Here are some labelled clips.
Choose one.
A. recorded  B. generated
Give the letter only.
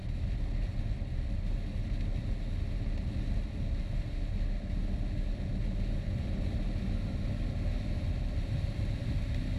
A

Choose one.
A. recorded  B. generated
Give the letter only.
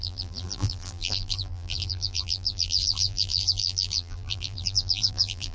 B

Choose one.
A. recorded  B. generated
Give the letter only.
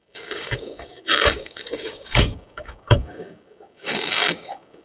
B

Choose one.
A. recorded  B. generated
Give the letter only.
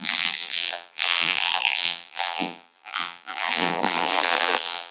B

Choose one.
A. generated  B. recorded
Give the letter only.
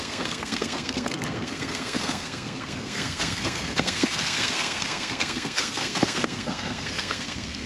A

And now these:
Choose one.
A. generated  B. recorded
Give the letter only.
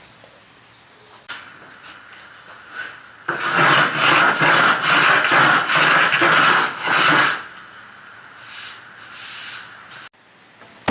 B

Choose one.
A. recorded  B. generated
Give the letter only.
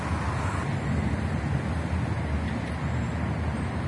A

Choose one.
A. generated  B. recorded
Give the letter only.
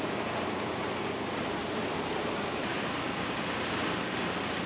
B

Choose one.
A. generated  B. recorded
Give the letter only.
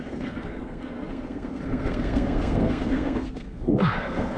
A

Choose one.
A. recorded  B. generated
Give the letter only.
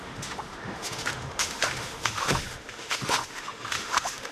B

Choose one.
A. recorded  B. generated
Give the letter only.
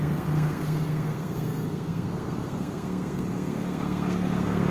B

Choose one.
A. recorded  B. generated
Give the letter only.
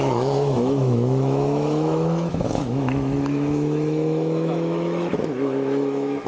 B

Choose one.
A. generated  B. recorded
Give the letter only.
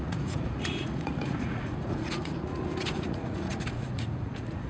A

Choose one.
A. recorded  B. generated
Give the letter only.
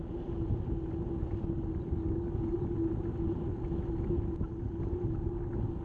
A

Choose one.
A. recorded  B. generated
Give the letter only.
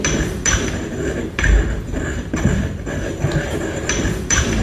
B